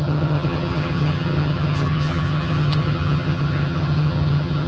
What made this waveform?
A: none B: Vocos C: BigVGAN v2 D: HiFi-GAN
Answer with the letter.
D